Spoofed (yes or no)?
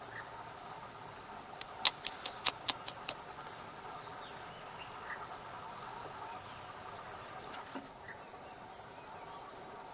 no